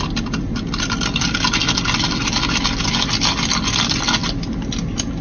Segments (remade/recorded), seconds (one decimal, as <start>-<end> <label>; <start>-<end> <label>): 0.0-5.2 recorded